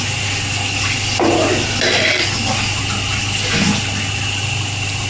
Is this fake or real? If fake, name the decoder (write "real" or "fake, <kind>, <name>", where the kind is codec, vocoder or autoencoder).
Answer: real